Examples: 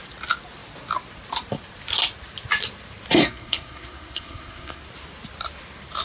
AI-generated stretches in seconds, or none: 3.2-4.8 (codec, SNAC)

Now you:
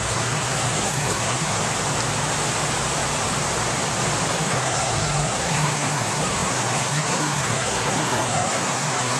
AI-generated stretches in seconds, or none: 0.0-1.6 (codec, SNAC); 4.3-9.2